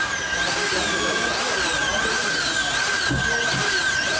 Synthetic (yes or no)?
no